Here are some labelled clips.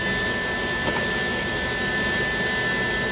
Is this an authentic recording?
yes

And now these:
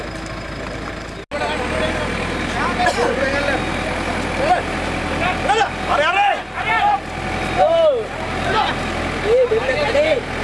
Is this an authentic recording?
yes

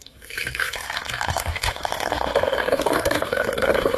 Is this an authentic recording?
no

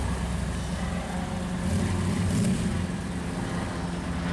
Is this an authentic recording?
yes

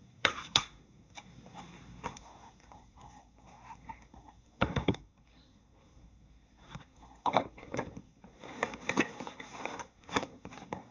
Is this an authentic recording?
no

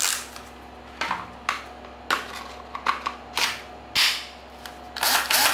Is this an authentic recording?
yes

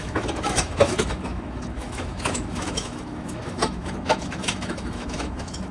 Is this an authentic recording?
no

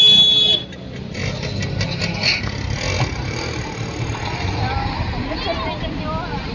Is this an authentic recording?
yes